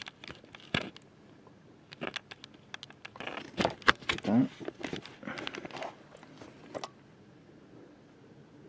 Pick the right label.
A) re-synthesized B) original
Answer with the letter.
B